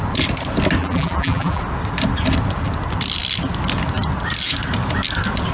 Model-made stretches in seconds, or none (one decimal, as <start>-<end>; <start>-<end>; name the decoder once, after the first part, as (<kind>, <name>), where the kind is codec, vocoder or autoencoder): 0.8-1.6 (vocoder, BigVGAN v2)